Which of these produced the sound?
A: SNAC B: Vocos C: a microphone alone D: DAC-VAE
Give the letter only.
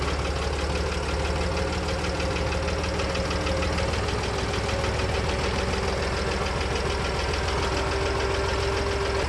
C